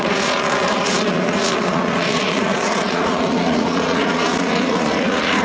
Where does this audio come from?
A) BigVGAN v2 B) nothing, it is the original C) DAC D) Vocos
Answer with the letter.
D